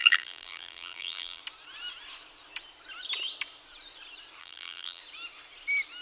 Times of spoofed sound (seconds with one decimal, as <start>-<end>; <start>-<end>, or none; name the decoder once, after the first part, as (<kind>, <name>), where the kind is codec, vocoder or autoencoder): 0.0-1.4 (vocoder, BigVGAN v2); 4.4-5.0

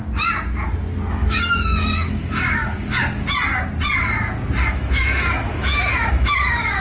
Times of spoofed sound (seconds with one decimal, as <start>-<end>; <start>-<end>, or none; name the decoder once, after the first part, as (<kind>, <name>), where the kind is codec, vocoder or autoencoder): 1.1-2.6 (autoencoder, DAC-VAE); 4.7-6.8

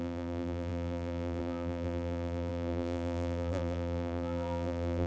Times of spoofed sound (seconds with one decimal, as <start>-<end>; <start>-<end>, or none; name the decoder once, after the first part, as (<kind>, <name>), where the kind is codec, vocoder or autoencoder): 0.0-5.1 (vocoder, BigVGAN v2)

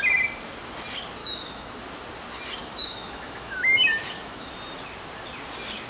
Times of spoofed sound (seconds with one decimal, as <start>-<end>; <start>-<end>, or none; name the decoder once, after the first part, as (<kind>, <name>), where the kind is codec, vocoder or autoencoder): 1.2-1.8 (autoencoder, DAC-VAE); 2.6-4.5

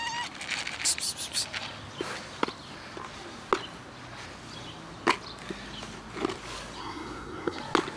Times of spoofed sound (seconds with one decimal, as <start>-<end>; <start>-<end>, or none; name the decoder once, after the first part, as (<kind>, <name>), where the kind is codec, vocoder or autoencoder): 6.8-7.6 (codec, SNAC)

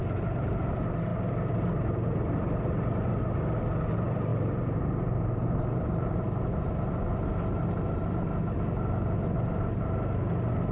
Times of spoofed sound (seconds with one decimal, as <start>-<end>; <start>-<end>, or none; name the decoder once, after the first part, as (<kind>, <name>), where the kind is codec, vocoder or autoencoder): 4.3-6.9 (vocoder, BigVGAN v2)

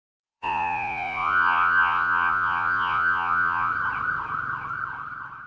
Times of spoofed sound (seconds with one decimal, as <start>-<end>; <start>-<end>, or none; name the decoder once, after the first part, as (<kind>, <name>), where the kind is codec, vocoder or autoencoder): 0.0-3.7 (vocoder, Vocos)

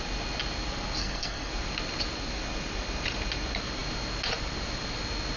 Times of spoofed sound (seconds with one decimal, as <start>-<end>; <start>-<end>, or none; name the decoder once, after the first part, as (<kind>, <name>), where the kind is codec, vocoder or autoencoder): 1.0-1.5 (codec, SNAC)